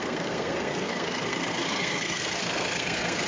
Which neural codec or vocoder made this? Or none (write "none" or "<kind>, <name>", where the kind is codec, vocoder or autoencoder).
codec, SNAC